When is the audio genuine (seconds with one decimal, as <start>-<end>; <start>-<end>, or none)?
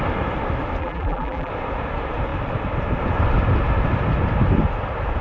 0.0-0.8; 1.5-5.2